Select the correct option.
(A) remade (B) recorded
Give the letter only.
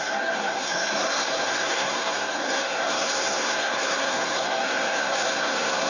A